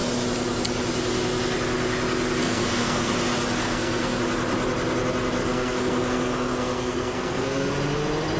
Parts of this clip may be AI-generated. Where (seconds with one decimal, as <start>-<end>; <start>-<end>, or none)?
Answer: 2.4-3.1; 3.6-4.2; 5.4-7.7